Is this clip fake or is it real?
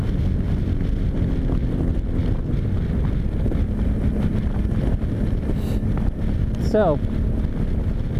real